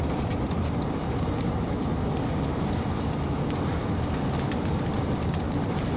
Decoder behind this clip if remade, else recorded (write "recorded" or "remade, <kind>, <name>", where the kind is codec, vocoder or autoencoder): recorded